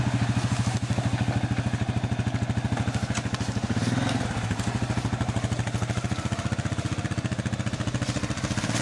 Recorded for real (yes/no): yes